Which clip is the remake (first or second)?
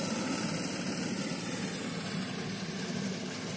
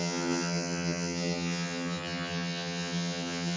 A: second